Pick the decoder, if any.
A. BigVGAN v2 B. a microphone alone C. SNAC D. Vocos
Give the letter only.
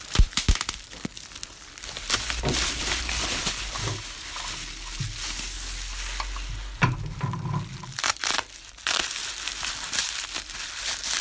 B